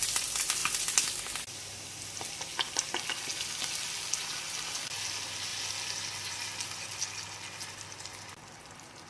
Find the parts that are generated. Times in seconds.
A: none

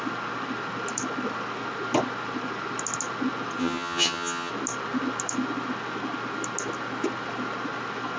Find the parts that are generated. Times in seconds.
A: 3.6-4.5

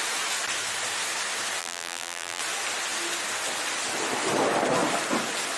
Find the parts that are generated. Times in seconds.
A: 1.6-2.4

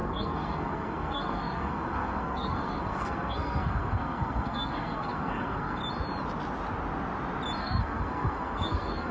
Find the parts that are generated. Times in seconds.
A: 0.0-5.8; 7.6-9.1

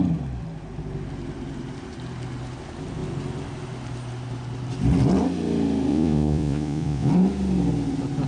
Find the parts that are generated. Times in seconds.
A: 5.9-7.1

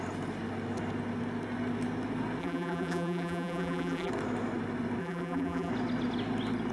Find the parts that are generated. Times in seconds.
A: 2.4-4.1; 5.0-5.7